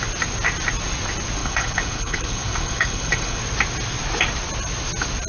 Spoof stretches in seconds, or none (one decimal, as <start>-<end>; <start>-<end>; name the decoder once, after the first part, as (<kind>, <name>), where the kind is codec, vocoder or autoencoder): 1.4-3.4 (codec, HILCodec)